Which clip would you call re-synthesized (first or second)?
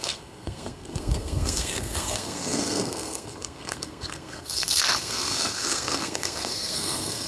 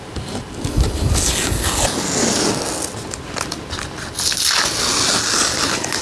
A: first